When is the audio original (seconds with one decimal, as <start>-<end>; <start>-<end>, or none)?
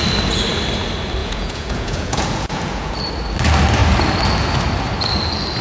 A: 0.0-1.2; 2.9-5.6